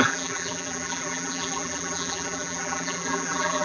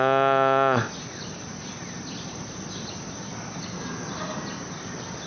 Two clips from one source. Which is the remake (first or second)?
first